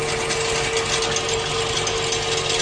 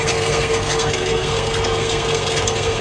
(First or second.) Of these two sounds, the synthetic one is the second